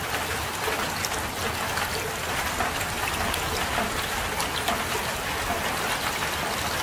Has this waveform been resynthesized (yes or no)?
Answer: no